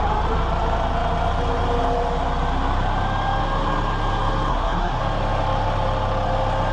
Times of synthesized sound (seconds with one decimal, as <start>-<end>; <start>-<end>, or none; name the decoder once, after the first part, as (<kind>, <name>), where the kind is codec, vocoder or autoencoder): 4.5-5.0 (codec, SNAC)